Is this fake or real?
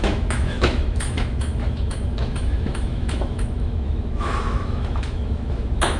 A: fake